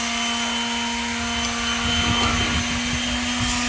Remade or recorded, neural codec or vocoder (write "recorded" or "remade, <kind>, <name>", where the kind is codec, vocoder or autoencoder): recorded